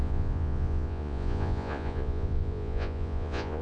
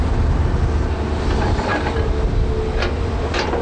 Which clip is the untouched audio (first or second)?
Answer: second